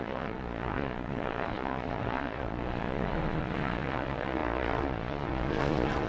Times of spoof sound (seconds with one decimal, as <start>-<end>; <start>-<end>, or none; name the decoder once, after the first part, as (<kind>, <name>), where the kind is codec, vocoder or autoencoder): 0.0-6.1 (vocoder, Vocos)